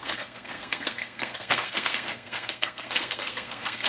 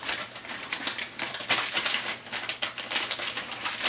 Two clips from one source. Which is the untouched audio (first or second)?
second